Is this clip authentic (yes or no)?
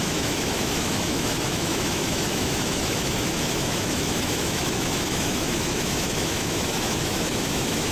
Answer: no